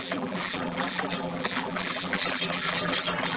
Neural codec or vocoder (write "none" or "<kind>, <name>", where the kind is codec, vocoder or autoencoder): vocoder, BigVGAN v2